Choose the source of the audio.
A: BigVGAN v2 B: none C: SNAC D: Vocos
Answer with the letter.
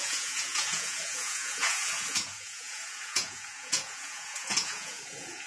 D